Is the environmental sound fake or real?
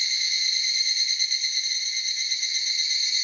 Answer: real